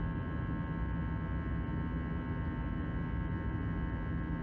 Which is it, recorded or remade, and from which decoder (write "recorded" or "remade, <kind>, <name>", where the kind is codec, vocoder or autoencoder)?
recorded